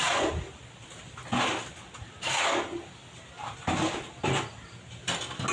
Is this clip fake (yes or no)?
no